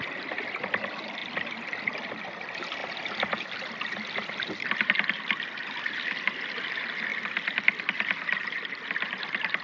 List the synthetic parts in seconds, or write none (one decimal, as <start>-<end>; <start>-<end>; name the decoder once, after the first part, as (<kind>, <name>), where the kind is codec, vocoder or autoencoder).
none